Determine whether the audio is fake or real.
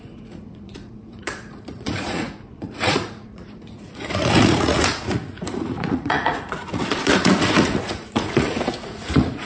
fake